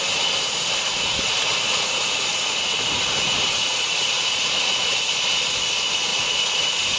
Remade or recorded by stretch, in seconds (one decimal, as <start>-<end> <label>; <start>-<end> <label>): 0.0-0.9 recorded; 0.9-5.1 remade; 5.1-6.1 recorded; 6.1-7.0 remade